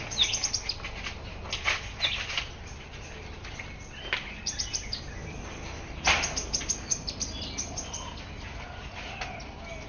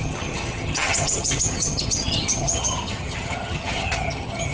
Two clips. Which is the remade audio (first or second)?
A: second